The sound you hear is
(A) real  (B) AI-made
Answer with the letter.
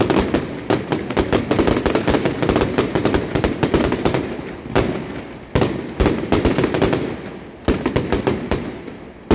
A